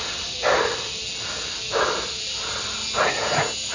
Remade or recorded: recorded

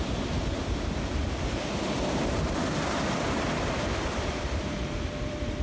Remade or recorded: remade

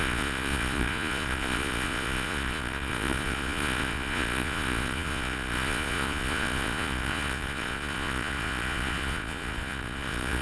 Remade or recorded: remade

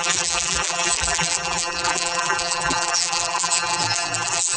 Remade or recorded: remade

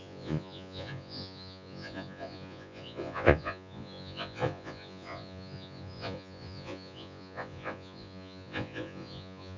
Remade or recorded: remade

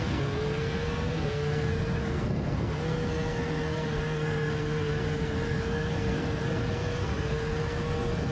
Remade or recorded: remade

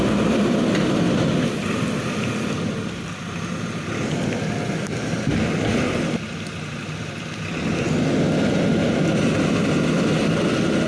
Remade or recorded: recorded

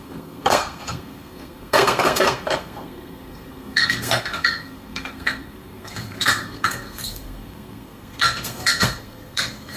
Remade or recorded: remade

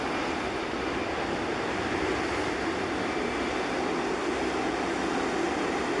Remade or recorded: recorded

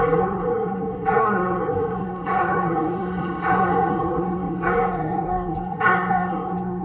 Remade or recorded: remade